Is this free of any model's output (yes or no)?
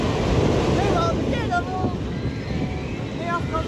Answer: yes